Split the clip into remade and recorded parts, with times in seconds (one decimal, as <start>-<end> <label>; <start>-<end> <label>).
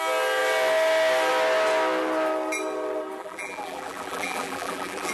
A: 0.0-3.2 recorded; 3.2-5.1 remade